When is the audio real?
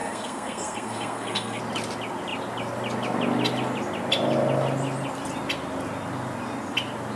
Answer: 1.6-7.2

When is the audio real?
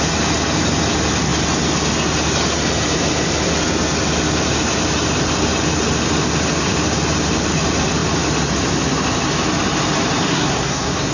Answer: 0.0-10.3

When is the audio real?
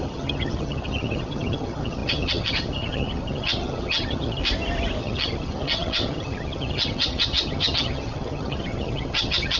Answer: 4.4-5.0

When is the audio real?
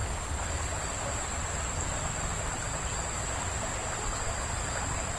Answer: 0.0-5.2